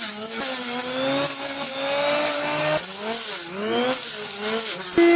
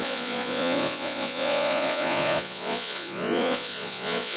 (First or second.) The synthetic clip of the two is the second